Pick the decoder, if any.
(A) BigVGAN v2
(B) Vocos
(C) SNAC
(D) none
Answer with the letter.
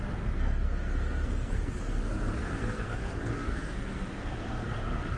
C